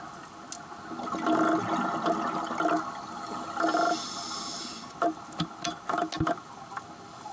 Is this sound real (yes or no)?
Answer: yes